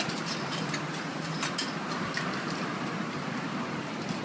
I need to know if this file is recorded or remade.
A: remade